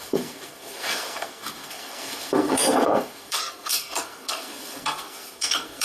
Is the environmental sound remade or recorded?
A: remade